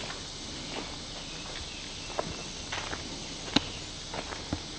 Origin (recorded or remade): recorded